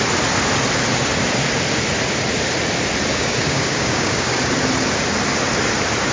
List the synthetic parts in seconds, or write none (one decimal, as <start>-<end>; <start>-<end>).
3.1-4.4